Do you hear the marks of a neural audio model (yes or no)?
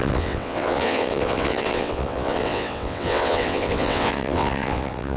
yes